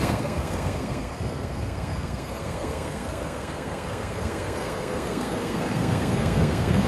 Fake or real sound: fake